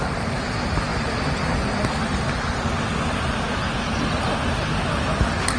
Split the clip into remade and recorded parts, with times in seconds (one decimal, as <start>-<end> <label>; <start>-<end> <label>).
0.0-5.6 recorded